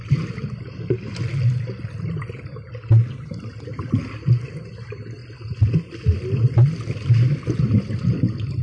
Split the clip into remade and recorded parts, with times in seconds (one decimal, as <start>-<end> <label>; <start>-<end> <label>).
0.0-8.6 recorded